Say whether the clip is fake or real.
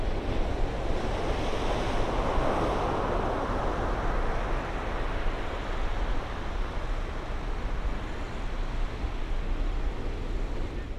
real